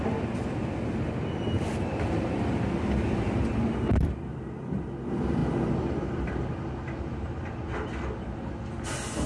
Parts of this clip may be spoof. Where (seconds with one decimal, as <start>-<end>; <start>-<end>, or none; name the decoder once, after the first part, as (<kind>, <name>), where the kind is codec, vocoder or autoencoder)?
none